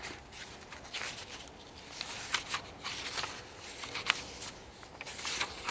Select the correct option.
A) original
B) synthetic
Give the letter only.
A